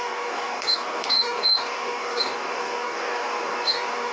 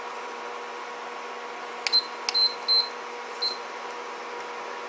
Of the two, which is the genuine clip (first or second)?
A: second